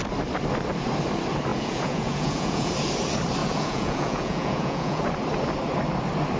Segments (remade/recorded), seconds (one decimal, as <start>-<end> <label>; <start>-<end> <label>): 0.0-1.5 recorded; 1.5-2.7 remade; 2.7-3.4 recorded; 3.4-5.1 remade; 5.1-6.4 recorded